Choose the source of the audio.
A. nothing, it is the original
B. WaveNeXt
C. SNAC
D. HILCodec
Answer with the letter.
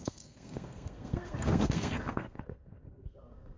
C